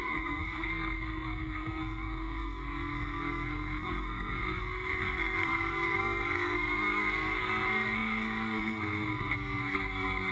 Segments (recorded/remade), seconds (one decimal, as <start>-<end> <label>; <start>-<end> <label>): 0.0-10.3 remade